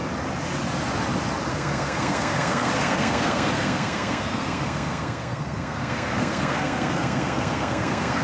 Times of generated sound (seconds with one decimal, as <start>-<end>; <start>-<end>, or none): 1.5-8.2